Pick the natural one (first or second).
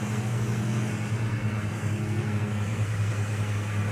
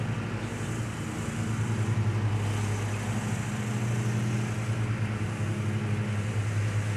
second